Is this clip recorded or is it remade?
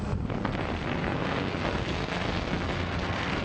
remade